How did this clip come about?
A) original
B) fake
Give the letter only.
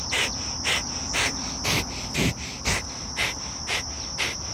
A